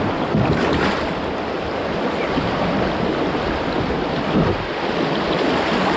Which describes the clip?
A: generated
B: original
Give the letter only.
B